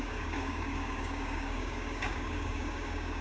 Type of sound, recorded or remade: remade